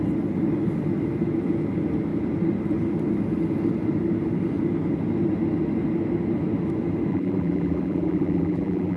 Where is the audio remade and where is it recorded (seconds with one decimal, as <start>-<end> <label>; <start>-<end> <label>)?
0.0-7.1 recorded; 7.1-9.0 remade